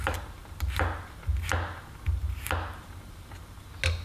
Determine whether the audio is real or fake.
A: real